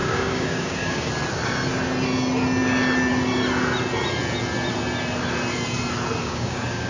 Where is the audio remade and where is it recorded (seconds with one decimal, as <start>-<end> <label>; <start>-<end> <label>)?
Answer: 0.0-1.1 remade; 1.1-6.2 recorded; 6.2-6.9 remade